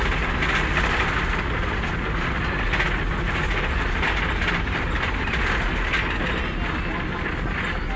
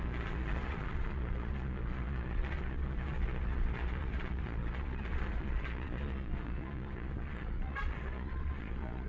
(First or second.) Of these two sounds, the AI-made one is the second